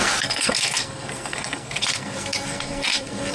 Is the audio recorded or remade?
remade